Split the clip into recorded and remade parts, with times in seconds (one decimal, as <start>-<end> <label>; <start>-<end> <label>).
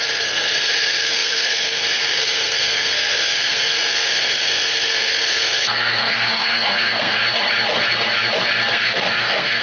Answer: 0.0-7.2 remade; 7.2-8.7 recorded; 8.7-9.6 remade